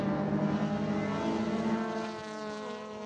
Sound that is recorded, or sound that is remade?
recorded